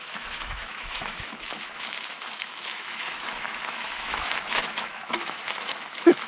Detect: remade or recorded remade